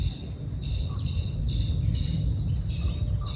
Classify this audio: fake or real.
real